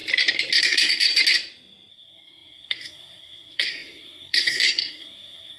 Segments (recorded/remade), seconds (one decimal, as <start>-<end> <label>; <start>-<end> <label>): 0.0-0.6 recorded; 0.6-1.1 remade; 1.1-1.9 recorded; 1.9-5.6 remade